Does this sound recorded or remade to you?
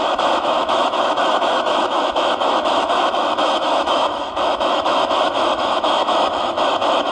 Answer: remade